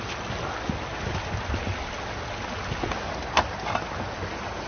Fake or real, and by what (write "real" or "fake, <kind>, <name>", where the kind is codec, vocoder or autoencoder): real